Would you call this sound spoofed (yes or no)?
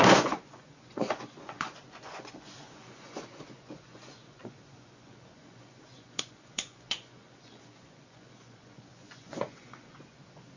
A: yes